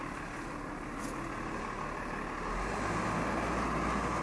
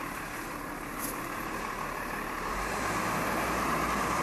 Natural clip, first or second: first